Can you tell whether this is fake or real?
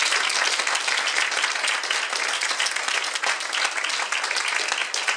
real